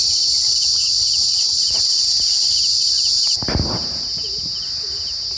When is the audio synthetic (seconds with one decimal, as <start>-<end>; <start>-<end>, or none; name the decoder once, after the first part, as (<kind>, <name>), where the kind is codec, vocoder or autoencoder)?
0.0-1.9 (vocoder, BigVGAN v2)